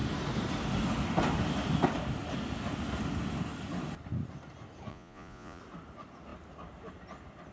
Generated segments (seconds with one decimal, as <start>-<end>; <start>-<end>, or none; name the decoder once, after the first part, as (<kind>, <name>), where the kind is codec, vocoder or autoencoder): 4.9-5.6 (vocoder, Vocos)